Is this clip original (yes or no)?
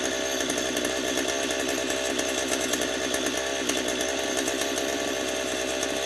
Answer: yes